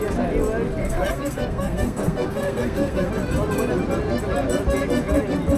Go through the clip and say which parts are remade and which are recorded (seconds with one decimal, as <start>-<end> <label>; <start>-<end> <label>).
0.0-0.8 recorded; 0.8-3.1 remade; 3.1-5.6 recorded